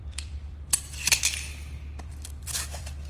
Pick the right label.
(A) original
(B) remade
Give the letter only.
B